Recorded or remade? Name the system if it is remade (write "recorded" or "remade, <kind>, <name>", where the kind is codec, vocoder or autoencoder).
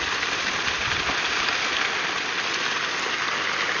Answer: recorded